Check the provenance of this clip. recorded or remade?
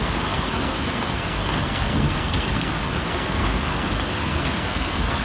remade